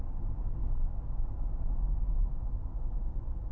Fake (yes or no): no